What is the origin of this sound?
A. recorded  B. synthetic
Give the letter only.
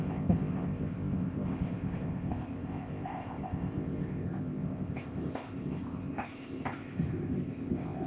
B